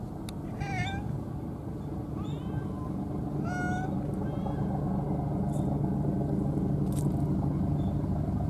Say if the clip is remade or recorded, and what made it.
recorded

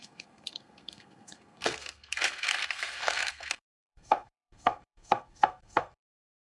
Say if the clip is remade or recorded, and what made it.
remade, codec, SNAC